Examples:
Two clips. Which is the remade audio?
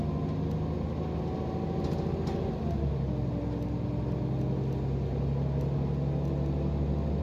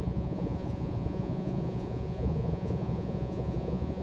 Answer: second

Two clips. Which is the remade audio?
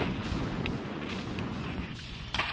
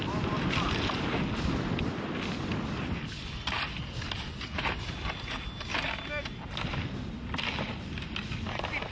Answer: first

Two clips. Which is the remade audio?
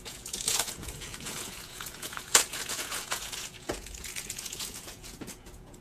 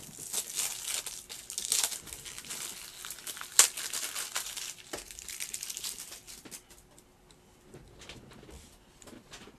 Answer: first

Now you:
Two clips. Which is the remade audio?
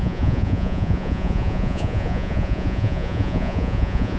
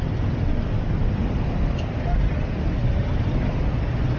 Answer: first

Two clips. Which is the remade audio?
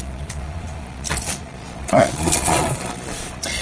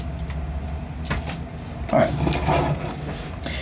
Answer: first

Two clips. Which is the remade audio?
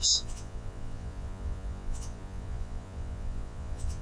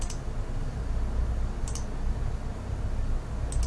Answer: first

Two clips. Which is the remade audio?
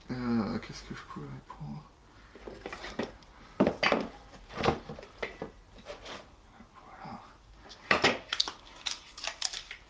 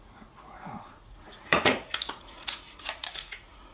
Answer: second